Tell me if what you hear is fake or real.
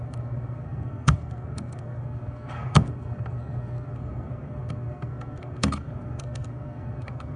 fake